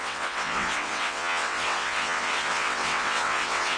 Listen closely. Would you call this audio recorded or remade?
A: remade